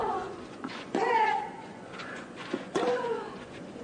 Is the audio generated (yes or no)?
yes